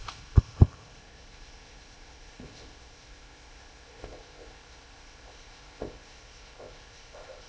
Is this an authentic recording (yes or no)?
no